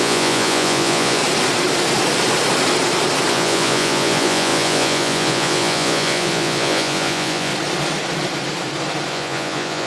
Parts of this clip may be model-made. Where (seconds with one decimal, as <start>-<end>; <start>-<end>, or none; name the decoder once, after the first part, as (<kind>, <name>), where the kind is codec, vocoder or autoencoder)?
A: 0.0-1.2 (vocoder, Vocos); 3.3-7.5; 9.1-9.9